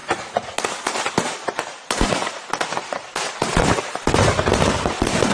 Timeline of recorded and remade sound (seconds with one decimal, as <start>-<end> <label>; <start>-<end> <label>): 0.0-3.2 remade; 3.2-5.3 recorded